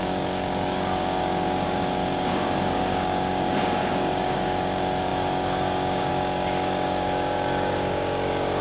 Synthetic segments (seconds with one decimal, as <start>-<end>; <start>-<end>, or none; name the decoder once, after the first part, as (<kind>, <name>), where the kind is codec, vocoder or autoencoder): 0.0-8.6 (codec, DAC)